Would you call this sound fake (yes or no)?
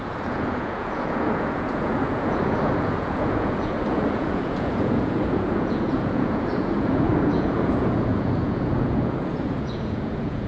yes